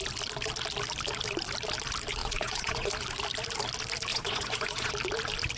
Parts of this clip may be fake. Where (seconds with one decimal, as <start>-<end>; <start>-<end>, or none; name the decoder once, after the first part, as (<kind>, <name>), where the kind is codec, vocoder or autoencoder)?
2.2-2.9 (vocoder, Vocos); 4.1-4.9